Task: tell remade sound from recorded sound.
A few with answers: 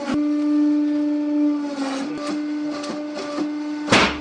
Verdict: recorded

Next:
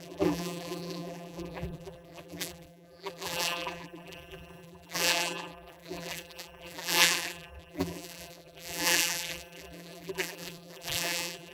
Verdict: remade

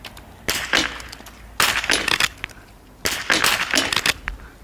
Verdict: recorded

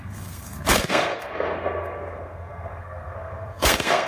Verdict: remade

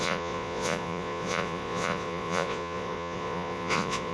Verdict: remade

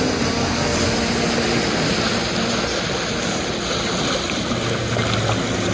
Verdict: recorded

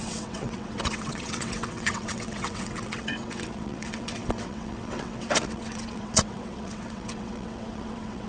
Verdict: remade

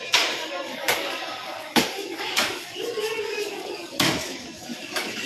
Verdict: remade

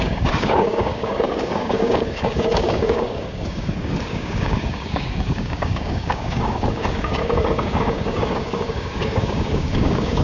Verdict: remade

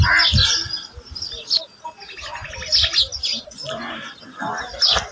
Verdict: recorded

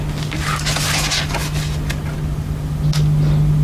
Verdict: recorded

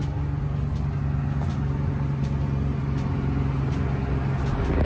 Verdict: recorded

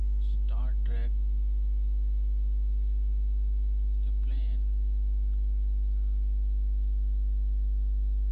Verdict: recorded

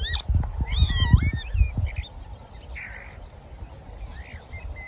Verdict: recorded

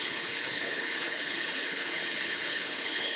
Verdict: remade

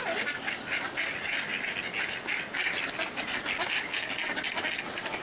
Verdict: recorded